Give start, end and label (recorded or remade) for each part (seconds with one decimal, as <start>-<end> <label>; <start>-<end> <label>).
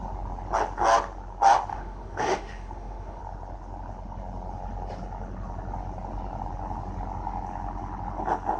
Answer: 0.0-1.7 recorded; 1.7-3.2 remade; 3.2-8.6 recorded